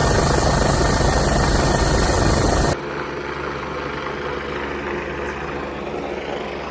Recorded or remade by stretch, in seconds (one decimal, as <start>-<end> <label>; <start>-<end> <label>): 0.0-4.0 remade; 4.0-6.7 recorded